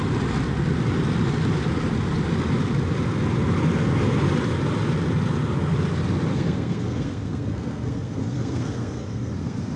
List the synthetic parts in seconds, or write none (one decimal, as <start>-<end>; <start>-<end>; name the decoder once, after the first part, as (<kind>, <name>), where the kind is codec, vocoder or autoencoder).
6.3-9.8 (codec, SNAC)